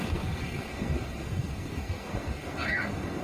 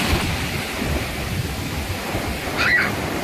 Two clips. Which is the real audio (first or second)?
second